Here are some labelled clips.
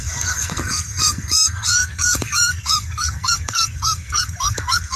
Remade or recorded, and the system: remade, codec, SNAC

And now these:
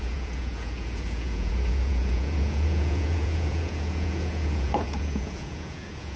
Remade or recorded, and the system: remade, vocoder, Vocos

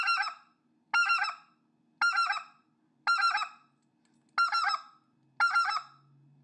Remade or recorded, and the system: recorded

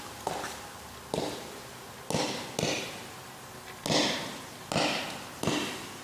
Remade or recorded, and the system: recorded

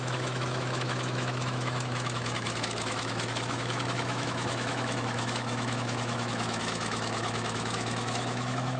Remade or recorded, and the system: remade, autoencoder, DAC-VAE